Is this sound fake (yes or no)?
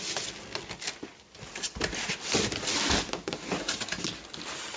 no